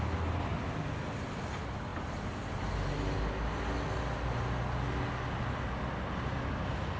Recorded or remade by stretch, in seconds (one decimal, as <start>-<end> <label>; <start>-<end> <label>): 0.0-7.0 recorded